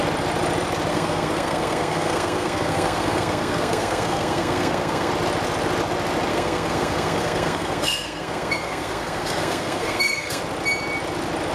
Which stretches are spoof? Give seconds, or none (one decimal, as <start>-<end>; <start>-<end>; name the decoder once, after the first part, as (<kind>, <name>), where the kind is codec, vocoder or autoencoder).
0.9-5.1 (codec, SNAC); 6.3-10.4